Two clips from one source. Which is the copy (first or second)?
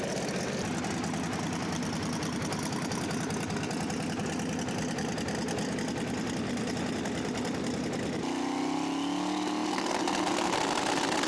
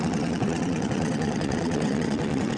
second